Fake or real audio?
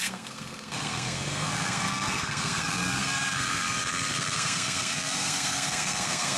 fake